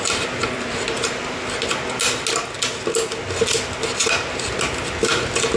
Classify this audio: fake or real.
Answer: real